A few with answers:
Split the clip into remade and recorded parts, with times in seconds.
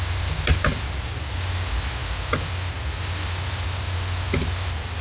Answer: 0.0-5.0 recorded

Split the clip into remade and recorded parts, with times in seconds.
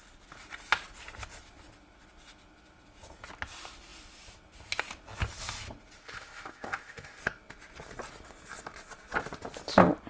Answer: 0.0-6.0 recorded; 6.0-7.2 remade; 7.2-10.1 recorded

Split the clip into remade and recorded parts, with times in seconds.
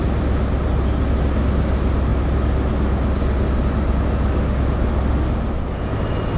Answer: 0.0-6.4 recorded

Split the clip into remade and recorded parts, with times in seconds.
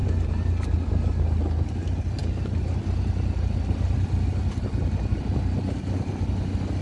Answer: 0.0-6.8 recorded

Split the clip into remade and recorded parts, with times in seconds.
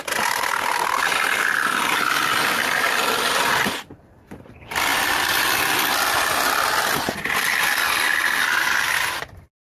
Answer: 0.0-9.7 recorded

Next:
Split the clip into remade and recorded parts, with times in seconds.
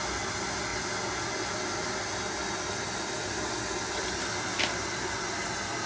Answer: 0.0-5.9 recorded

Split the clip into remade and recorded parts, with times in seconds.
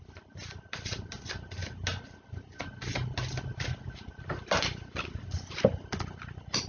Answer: 0.0-6.7 recorded